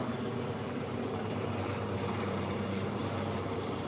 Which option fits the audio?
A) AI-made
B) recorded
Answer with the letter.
A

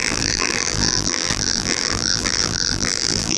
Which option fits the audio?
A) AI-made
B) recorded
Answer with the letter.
A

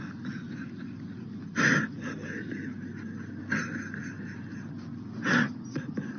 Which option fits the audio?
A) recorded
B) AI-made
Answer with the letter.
A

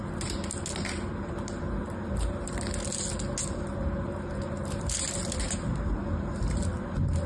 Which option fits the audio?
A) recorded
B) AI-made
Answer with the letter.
A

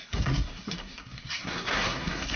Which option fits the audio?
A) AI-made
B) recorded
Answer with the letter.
A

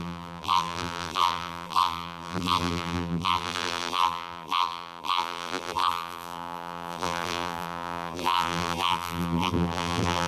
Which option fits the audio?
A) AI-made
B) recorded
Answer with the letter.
A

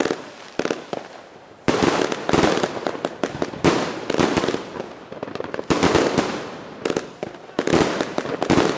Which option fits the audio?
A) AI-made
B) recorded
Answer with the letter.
A